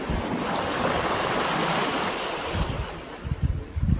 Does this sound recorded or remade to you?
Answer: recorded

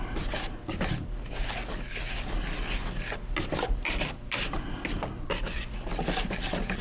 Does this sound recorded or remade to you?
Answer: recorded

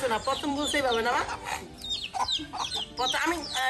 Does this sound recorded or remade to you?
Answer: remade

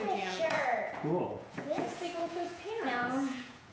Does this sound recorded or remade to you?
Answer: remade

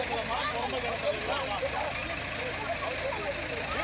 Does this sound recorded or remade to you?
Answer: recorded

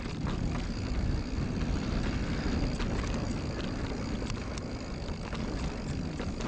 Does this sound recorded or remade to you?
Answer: recorded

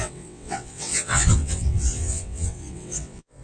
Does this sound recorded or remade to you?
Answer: remade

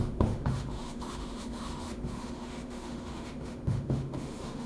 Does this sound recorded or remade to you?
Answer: remade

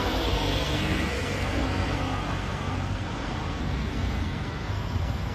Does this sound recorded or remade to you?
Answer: remade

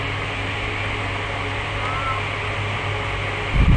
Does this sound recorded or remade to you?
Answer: recorded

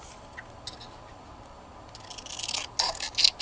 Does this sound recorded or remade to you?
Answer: recorded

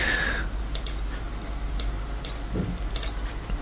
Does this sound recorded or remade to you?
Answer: recorded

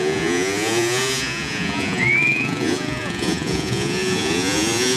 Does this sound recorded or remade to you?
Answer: remade